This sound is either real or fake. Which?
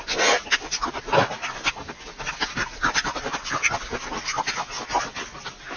real